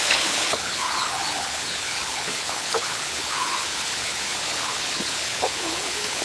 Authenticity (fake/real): fake